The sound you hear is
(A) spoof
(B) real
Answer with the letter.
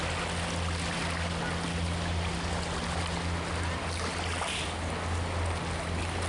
B